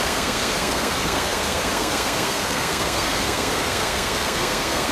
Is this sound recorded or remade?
remade